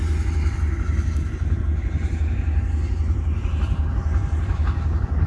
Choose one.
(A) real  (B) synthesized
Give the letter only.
A